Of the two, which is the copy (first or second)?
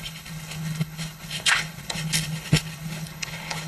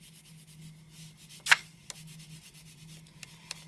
first